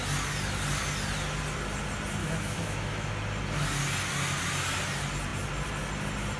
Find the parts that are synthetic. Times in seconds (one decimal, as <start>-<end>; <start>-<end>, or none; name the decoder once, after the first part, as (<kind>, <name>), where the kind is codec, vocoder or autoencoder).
2.2-3.1 (autoencoder, DAC-VAE)